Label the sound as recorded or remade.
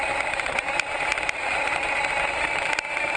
recorded